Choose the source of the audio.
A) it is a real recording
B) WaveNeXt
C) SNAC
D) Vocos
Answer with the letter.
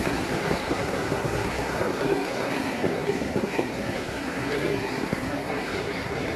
C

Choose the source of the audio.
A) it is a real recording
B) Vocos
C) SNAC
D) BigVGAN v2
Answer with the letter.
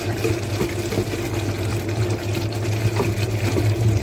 A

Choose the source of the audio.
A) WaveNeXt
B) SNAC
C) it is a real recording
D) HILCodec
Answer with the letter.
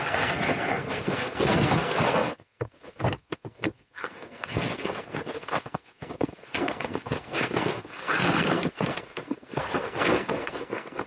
B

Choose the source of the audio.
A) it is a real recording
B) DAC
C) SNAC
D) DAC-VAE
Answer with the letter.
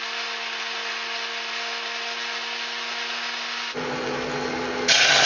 A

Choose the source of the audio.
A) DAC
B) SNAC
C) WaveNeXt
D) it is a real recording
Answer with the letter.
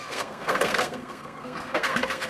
B